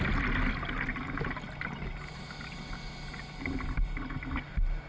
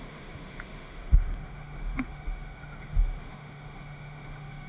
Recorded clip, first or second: first